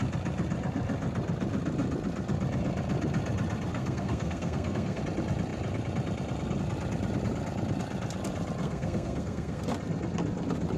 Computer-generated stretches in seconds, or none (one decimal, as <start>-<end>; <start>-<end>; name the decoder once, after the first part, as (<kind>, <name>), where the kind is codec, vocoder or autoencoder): 3.7-5.0 (codec, SNAC); 8.6-9.6